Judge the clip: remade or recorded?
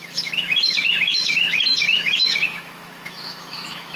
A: remade